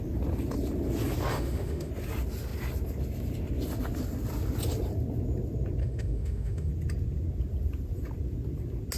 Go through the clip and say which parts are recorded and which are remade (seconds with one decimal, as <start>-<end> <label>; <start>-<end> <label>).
0.0-1.3 recorded; 1.3-1.9 remade; 1.9-5.8 recorded; 5.8-6.7 remade; 6.7-9.0 recorded